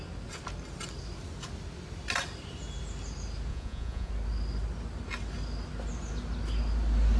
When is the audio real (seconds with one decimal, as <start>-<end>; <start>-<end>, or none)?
0.0-3.5; 4.1-7.2